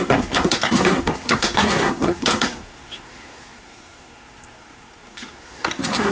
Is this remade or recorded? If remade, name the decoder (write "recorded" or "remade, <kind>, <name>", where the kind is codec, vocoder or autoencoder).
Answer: remade, codec, SNAC